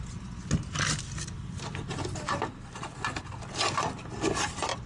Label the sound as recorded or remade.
recorded